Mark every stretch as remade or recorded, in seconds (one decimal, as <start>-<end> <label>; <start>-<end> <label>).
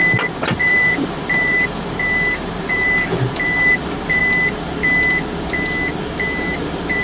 0.0-0.6 recorded; 0.6-4.2 remade; 4.2-6.0 recorded; 6.0-7.0 remade